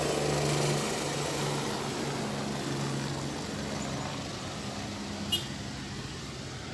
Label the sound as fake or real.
real